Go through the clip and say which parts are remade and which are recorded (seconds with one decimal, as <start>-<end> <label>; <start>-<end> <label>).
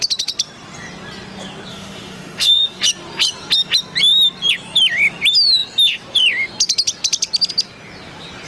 0.0-1.7 recorded; 1.7-2.8 remade; 2.8-8.5 recorded